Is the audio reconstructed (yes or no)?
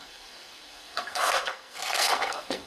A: yes